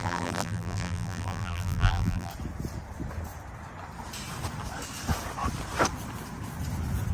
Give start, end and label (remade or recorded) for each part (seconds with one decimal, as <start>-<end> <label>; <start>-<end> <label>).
0.0-2.3 remade; 2.3-7.1 recorded